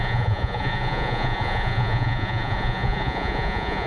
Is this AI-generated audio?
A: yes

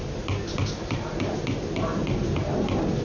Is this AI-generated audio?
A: no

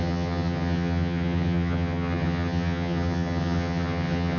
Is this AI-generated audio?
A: yes